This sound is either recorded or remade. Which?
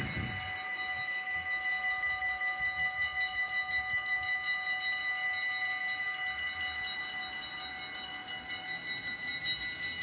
recorded